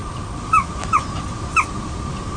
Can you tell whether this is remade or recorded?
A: recorded